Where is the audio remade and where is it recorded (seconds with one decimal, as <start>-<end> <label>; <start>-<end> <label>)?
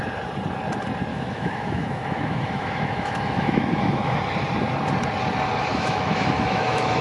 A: 0.0-1.1 recorded; 1.1-4.2 remade; 4.2-5.7 recorded; 5.7-7.0 remade